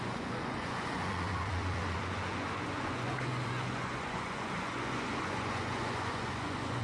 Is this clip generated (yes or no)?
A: yes